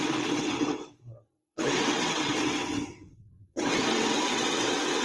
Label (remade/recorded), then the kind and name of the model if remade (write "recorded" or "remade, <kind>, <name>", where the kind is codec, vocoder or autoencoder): remade, vocoder, WaveNeXt